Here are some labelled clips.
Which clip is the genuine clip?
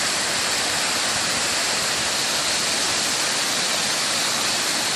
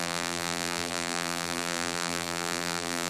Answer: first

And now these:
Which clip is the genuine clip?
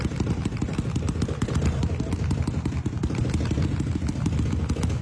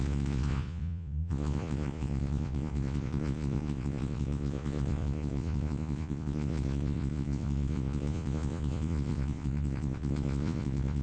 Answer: first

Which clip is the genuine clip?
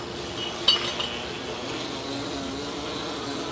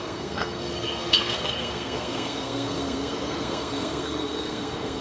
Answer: first